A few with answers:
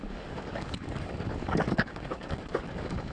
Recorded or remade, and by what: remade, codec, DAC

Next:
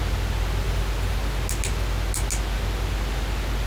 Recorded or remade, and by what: recorded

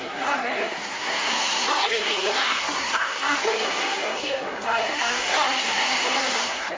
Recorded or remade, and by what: remade, codec, SNAC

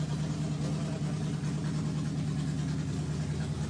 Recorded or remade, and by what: recorded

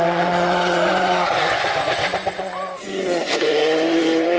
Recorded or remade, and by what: remade, vocoder, Vocos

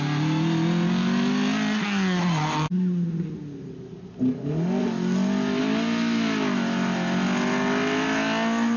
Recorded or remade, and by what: recorded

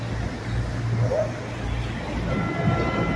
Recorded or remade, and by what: recorded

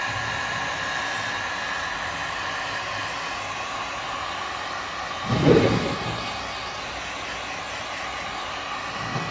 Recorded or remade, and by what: recorded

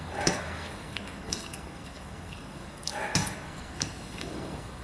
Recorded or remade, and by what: remade, codec, SNAC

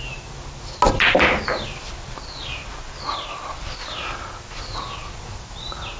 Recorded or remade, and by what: recorded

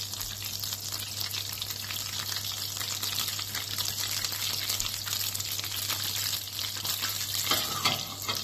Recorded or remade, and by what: recorded